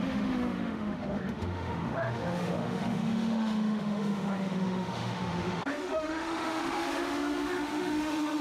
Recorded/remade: remade